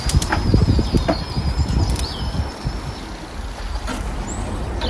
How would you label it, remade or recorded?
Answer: recorded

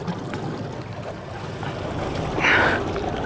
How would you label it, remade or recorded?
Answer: recorded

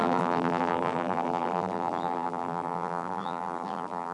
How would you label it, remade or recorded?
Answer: remade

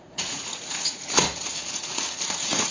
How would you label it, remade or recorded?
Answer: remade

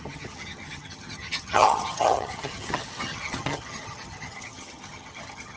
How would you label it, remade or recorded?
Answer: remade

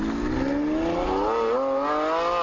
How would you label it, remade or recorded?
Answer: recorded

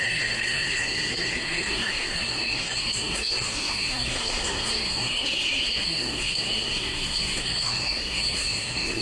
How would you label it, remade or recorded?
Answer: remade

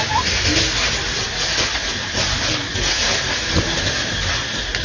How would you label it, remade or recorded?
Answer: recorded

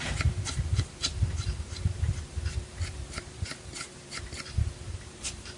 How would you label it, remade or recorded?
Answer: remade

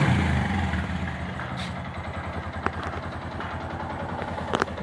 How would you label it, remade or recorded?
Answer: recorded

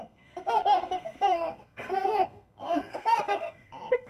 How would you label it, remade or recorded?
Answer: remade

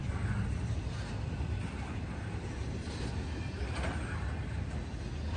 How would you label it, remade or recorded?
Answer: recorded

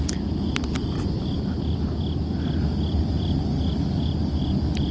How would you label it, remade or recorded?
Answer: recorded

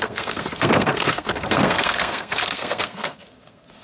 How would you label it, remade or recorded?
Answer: remade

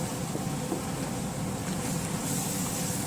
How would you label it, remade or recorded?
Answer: recorded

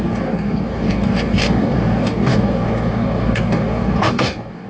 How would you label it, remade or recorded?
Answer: remade